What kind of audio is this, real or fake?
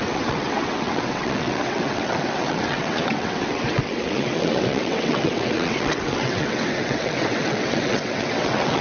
fake